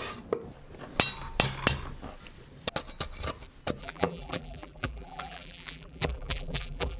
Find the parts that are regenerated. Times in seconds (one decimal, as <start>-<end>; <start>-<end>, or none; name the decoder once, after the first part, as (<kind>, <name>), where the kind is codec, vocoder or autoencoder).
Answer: 3.8-7.0 (vocoder, BigVGAN v2)